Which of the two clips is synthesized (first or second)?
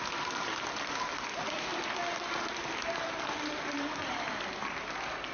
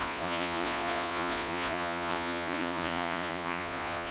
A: second